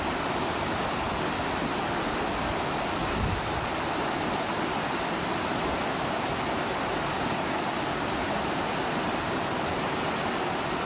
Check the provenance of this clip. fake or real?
real